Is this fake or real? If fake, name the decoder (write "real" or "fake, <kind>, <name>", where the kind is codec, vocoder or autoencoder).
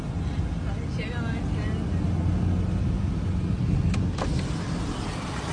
real